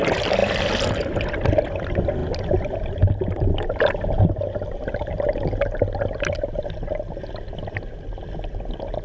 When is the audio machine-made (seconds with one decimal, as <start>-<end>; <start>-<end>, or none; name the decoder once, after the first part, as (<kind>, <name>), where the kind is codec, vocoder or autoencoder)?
none